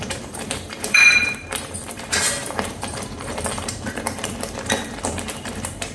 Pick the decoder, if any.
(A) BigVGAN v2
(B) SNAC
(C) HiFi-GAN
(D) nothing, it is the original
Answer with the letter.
A